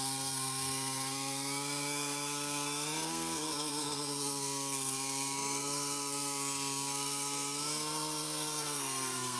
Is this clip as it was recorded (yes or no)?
no